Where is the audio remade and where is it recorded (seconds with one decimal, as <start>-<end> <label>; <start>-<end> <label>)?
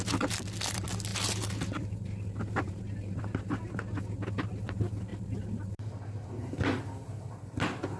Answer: 0.0-1.1 recorded; 1.1-3.2 remade; 3.2-5.1 recorded; 5.1-6.0 remade; 6.0-8.0 recorded